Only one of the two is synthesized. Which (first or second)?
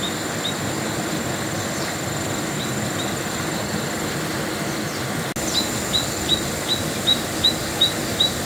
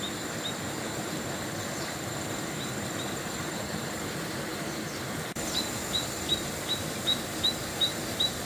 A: second